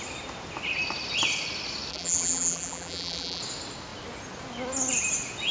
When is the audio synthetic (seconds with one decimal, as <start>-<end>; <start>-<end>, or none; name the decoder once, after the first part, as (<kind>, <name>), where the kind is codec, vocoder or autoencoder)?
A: 1.9-3.4 (vocoder, BigVGAN v2)

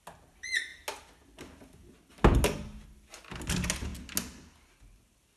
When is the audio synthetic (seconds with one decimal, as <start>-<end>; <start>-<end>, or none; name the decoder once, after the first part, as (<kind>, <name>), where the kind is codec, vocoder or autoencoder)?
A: none

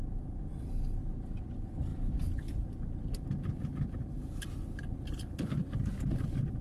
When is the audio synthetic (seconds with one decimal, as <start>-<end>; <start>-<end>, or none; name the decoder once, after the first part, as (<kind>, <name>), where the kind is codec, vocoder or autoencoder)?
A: 0.0-6.6 (vocoder, BigVGAN v2)

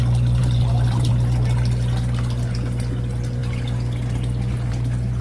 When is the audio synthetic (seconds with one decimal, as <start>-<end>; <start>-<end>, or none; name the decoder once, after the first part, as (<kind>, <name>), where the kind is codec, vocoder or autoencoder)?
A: 0.4-1.1 (vocoder, BigVGAN v2)

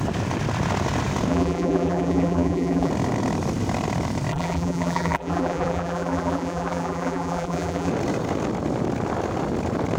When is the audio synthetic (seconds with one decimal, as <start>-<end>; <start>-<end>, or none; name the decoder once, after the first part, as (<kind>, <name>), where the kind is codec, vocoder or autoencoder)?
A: 1.3-2.9 (vocoder, BigVGAN v2); 4.3-7.9